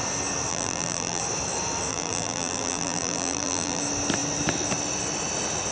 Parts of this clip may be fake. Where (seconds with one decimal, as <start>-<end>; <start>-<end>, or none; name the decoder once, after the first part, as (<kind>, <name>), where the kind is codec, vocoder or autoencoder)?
0.5-1.2 (vocoder, BigVGAN v2); 1.9-3.8